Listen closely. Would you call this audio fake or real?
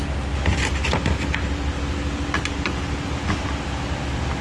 real